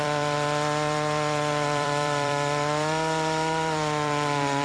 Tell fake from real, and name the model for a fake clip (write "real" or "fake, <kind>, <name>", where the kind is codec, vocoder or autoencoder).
fake, vocoder, BigVGAN v2